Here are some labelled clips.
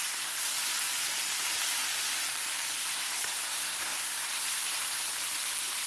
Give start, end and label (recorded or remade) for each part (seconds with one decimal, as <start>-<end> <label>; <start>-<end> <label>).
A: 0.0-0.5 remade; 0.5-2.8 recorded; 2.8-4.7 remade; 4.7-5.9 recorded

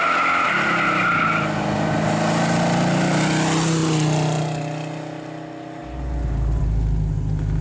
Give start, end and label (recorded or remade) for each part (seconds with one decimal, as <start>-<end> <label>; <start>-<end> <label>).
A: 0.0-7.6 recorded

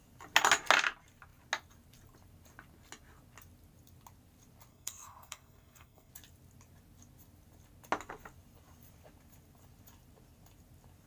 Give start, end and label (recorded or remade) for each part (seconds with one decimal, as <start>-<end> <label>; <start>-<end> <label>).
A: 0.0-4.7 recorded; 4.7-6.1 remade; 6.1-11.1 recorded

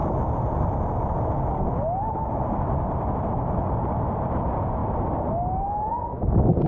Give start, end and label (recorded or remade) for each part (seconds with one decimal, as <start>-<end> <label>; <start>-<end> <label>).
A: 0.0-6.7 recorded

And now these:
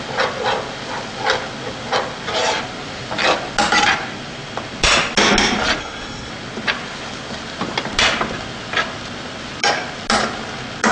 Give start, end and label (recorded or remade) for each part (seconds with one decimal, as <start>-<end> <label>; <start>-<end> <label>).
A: 0.0-5.8 recorded; 5.8-6.3 remade; 6.3-10.9 recorded

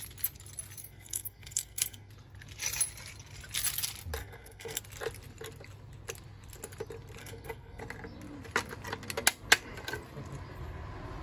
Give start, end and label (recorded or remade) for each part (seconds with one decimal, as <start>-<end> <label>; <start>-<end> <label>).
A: 0.0-0.8 recorded; 0.8-2.1 remade; 2.1-4.2 recorded; 4.2-4.8 remade; 4.8-7.2 recorded; 7.2-7.8 remade; 7.8-11.2 recorded

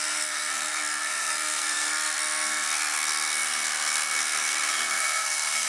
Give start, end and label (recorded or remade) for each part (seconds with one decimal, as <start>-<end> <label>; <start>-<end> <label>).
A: 0.0-5.7 remade